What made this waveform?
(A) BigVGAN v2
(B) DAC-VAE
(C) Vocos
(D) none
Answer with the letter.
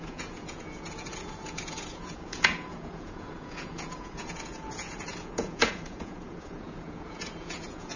C